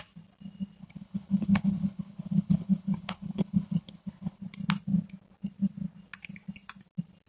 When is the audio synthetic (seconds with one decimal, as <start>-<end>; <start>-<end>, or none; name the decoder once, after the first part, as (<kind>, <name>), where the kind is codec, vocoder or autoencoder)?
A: 0.8-4.4 (codec, HILCodec)